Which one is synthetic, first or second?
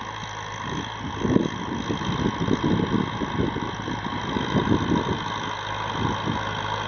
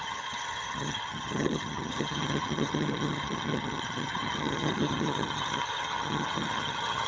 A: second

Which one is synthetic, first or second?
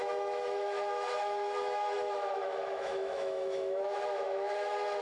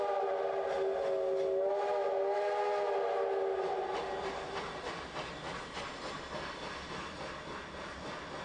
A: first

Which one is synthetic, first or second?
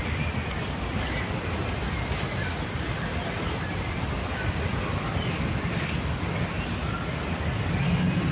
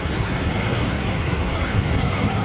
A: second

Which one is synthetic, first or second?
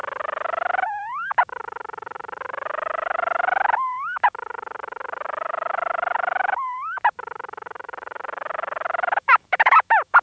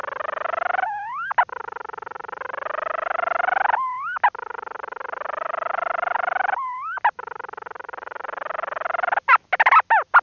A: first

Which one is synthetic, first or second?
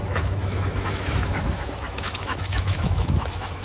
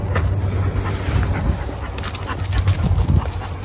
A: first